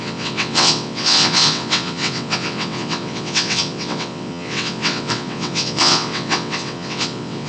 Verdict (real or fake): fake